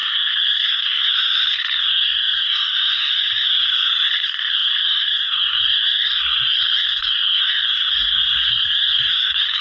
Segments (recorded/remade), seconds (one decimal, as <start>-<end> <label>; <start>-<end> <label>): 0.0-9.6 remade